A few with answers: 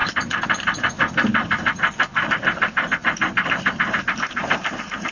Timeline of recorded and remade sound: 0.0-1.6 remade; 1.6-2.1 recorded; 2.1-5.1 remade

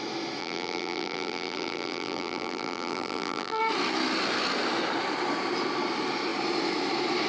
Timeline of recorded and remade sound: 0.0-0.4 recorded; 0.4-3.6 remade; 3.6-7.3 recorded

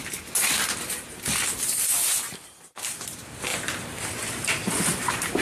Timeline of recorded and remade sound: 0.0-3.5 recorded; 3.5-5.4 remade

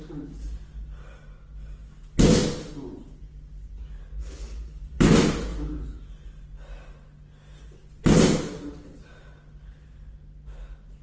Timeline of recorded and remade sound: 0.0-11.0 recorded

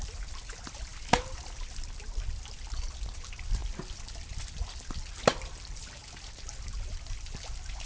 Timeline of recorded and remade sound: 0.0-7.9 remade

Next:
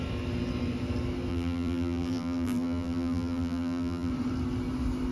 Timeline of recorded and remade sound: 0.0-1.3 recorded; 1.3-4.1 remade; 4.1-5.1 recorded